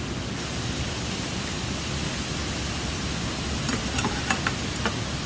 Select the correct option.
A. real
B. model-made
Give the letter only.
A